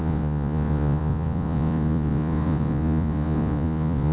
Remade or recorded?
remade